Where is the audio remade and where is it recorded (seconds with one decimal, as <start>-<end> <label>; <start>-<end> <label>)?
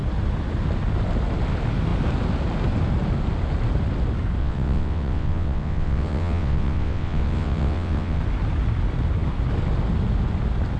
0.0-4.4 recorded; 4.4-8.2 remade; 8.2-10.8 recorded